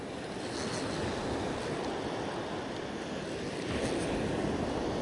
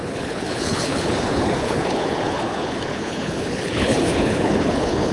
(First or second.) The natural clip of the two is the first